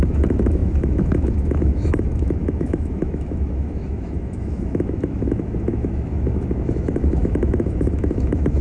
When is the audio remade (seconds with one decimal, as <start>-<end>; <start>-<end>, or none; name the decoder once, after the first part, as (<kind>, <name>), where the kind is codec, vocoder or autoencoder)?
0.0-8.6 (autoencoder, DAC-VAE)